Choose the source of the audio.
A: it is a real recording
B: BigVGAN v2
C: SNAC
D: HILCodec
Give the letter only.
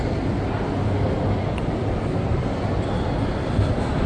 A